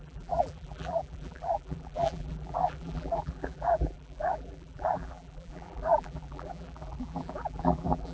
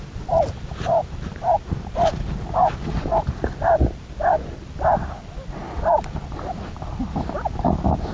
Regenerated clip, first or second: first